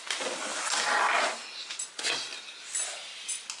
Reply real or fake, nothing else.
real